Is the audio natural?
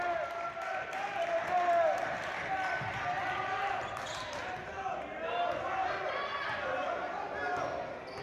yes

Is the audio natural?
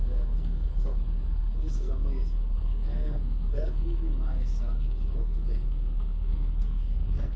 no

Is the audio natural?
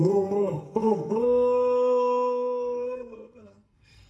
no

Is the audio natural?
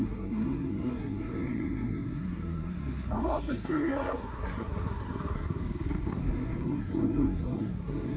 no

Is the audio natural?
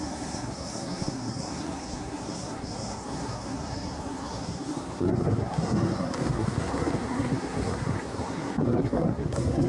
no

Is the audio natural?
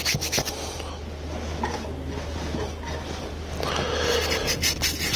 yes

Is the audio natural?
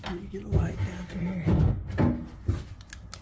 yes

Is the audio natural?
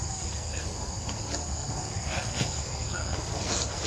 no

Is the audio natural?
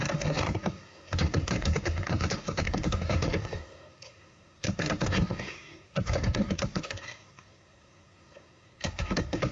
no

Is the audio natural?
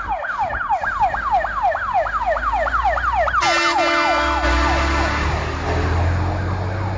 yes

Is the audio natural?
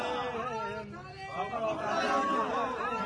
yes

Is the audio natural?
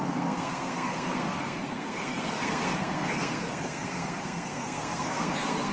no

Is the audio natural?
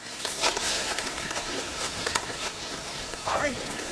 no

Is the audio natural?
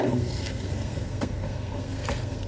no